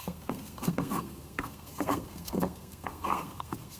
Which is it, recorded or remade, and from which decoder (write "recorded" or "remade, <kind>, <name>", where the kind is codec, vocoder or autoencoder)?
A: remade, codec, SNAC